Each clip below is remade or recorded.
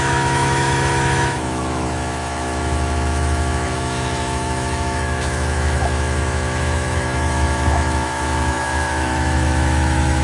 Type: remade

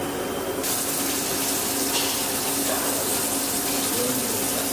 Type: recorded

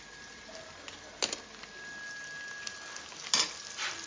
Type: recorded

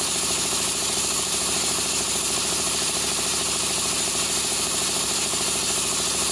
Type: remade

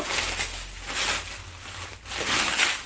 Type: recorded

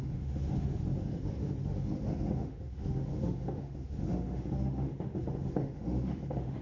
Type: remade